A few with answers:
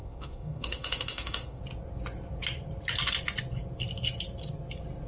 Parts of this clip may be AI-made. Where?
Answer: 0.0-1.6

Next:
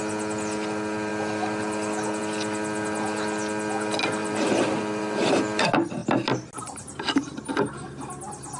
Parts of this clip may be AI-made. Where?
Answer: 4.2-5.4

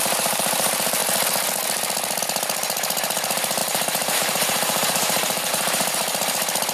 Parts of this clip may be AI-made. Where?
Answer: 0.0-1.0; 2.2-6.7

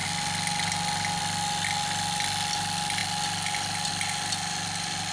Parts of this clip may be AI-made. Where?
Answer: none

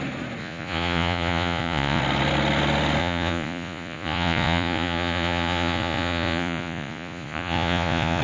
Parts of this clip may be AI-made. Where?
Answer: 0.4-2.0; 3.0-8.2